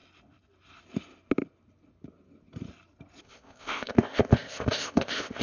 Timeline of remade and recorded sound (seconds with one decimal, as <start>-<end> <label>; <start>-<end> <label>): 0.0-3.2 recorded; 3.2-5.4 remade